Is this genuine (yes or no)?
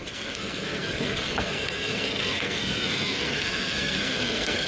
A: no